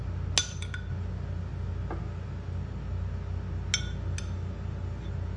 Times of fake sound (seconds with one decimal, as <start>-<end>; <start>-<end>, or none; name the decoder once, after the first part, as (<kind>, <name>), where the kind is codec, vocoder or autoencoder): none